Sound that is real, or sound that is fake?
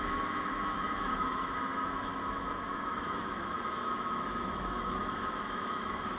fake